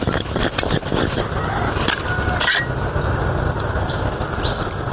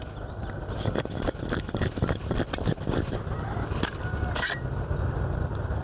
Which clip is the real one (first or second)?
first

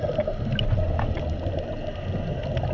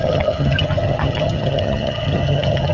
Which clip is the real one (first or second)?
first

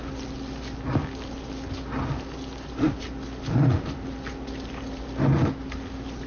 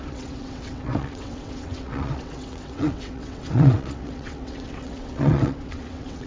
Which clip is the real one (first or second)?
first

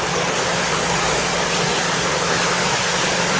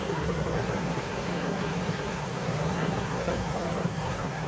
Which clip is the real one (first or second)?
first